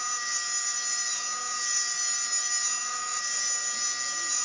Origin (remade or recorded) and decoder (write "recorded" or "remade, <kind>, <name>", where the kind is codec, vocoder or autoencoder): recorded